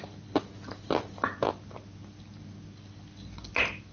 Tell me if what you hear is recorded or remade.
recorded